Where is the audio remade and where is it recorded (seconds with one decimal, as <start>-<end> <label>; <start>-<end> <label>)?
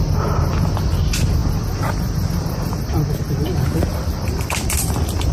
0.0-1.4 recorded; 1.4-3.2 remade; 3.2-3.9 recorded; 3.9-5.3 remade